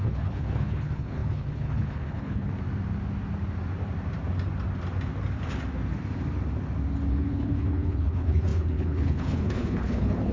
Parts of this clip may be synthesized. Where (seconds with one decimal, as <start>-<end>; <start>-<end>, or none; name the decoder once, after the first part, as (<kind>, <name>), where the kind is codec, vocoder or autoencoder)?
0.0-2.5 (codec, HILCodec); 7.1-10.3